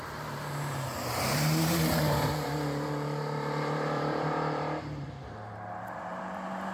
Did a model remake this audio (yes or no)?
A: yes